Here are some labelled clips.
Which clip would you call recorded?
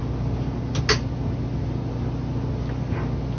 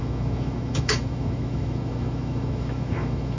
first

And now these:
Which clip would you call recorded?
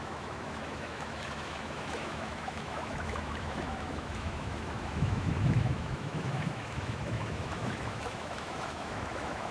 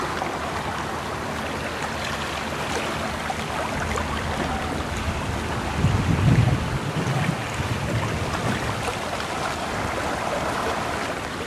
second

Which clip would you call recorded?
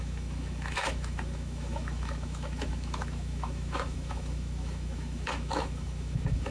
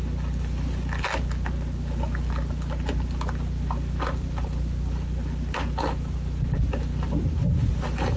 second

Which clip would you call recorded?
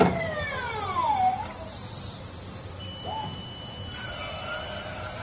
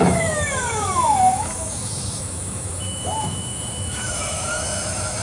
first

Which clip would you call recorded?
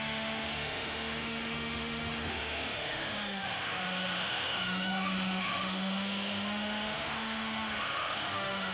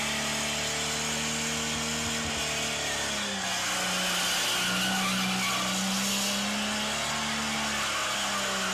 second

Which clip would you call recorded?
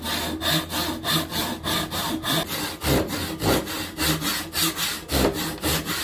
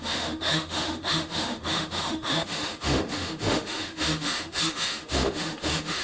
first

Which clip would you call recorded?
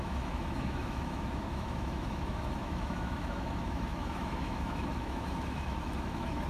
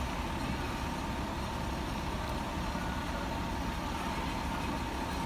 second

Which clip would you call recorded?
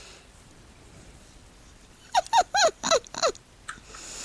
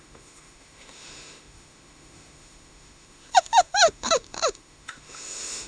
first